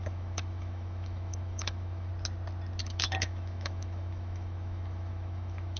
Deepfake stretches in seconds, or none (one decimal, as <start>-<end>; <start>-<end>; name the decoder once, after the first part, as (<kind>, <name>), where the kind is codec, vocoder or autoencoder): 0.0-2.1 (autoencoder, DAC-VAE); 2.8-5.8